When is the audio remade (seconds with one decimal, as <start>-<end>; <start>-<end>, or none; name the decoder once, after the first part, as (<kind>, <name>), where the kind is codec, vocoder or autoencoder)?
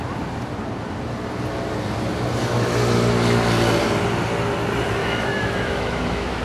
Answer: 5.0-6.4 (autoencoder, DAC-VAE)